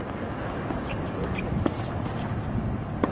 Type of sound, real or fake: real